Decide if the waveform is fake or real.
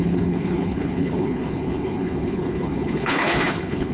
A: fake